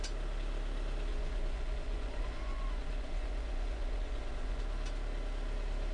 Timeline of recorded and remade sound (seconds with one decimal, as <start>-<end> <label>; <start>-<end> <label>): 0.0-1.1 recorded; 1.1-4.6 remade; 4.6-5.9 recorded